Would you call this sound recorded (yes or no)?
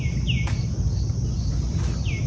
yes